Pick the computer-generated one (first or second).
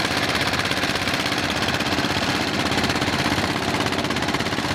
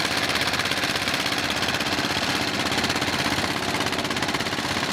first